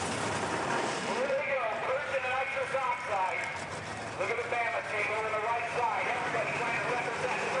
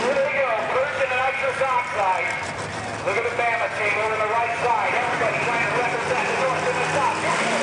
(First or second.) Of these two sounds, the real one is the second